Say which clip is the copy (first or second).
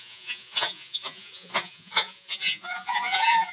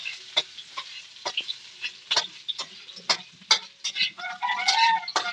first